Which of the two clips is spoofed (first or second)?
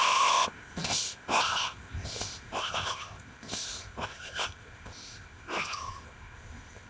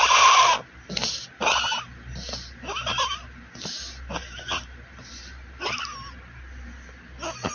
first